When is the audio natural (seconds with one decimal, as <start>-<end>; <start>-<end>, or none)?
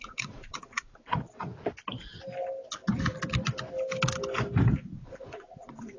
1.1-4.7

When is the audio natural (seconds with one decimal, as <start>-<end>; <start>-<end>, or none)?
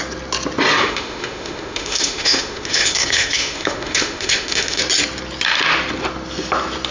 0.0-0.7; 4.8-6.9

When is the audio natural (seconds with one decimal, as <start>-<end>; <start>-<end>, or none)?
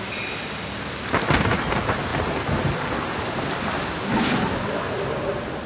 0.0-5.7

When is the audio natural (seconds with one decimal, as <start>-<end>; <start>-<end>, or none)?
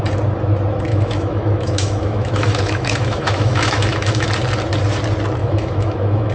0.0-0.9; 4.3-5.4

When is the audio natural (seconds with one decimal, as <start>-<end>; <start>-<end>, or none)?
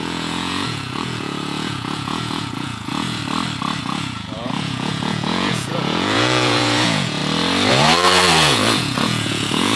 3.2-3.8; 7.2-7.7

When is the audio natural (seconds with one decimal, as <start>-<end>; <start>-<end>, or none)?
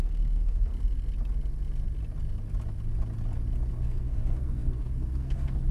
0.7-3.7